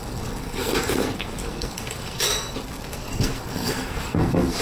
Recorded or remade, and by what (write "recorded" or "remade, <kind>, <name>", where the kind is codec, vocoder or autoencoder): remade, codec, SNAC